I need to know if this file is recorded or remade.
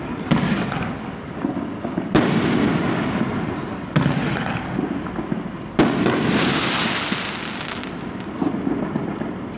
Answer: recorded